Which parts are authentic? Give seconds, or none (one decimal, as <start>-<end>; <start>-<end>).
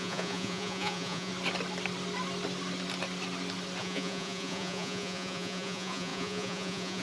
1.3-3.8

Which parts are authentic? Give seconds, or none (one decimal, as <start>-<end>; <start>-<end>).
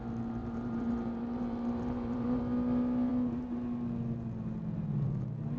0.0-0.4; 2.4-5.6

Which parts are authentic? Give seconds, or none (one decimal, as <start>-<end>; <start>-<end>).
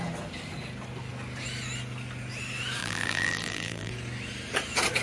0.0-2.8; 3.9-5.0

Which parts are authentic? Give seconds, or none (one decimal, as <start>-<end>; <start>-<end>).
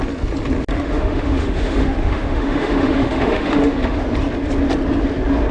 0.0-0.7; 4.0-5.5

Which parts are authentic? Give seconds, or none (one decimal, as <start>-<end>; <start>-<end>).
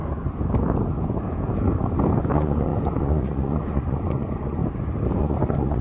0.0-2.3; 4.6-5.2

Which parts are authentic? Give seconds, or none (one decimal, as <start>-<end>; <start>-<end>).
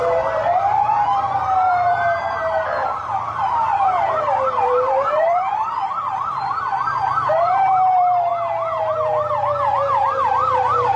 8.3-8.9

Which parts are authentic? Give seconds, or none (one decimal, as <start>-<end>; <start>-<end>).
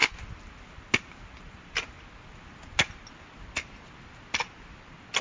0.0-5.2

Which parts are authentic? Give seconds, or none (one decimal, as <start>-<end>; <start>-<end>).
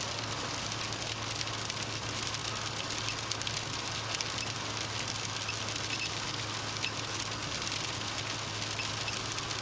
0.0-9.6